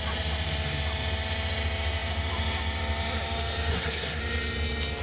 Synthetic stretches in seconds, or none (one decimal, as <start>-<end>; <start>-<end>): 3.7-4.2